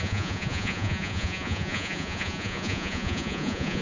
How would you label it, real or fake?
fake